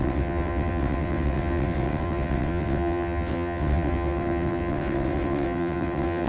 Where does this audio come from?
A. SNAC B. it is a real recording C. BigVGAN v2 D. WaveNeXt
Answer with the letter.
D